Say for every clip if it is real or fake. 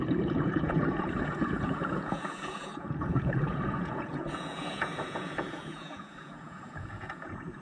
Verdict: fake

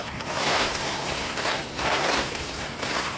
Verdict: fake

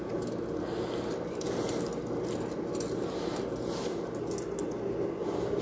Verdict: real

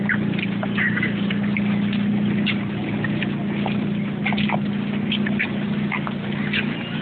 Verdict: real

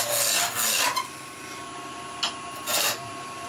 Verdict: real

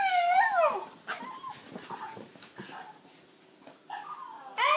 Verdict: real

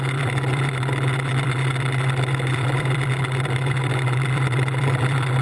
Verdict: fake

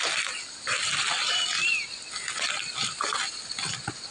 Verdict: real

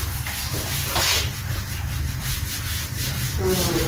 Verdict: fake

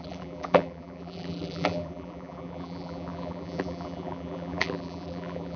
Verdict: fake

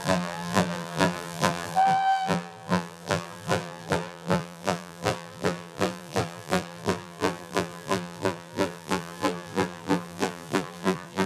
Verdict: fake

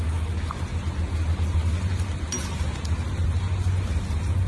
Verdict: real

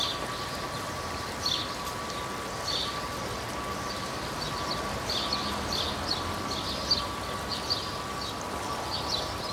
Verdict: real